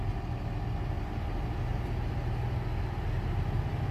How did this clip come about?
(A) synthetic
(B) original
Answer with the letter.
B